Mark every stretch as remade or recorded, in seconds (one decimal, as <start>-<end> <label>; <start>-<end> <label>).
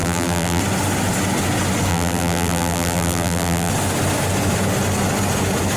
0.0-0.6 remade; 0.6-1.9 recorded; 1.9-3.7 remade; 3.7-5.8 recorded